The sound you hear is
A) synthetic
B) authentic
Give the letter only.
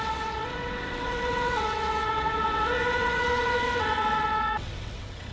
A